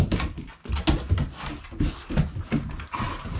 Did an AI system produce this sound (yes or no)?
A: no